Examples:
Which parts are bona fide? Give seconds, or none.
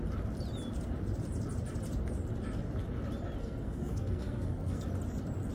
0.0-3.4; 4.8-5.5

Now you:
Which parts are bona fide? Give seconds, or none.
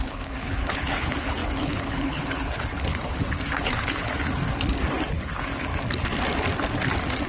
4.4-5.1; 5.7-7.3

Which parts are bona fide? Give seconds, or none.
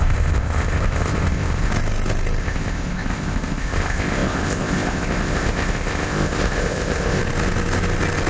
1.7-2.4; 7.2-8.3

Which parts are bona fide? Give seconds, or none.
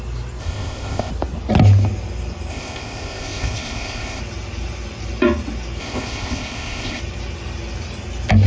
0.0-0.4; 1.1-2.5; 4.2-5.8; 7.0-8.5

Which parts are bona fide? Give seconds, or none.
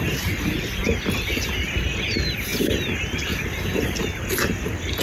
0.0-5.0